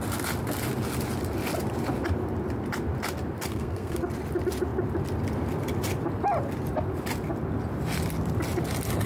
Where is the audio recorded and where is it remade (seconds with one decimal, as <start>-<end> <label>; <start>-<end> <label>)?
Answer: 0.0-3.5 recorded; 3.5-4.0 remade; 4.0-9.1 recorded